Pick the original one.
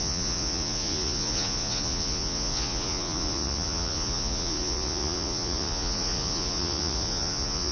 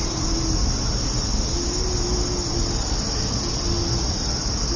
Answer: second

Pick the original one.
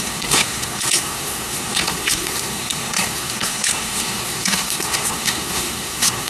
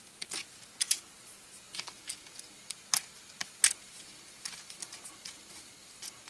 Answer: second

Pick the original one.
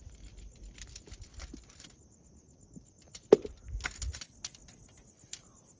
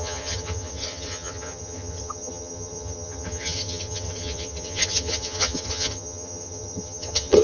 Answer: first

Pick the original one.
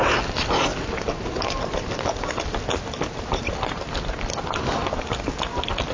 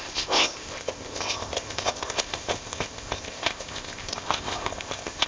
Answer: first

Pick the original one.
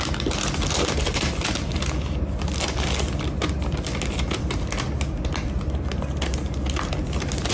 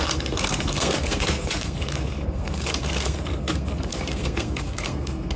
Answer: first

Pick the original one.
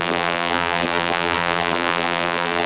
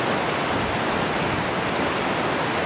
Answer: second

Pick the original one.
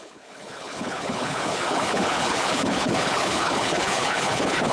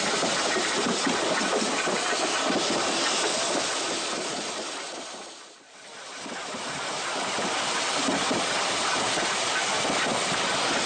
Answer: second